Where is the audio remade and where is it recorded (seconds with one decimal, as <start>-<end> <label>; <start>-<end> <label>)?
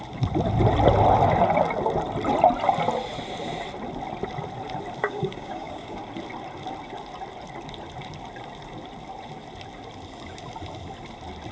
0.0-5.0 recorded; 5.0-6.0 remade; 6.0-11.5 recorded